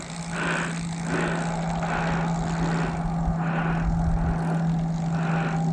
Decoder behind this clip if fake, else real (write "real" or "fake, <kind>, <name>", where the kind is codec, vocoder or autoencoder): real